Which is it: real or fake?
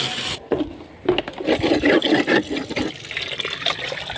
real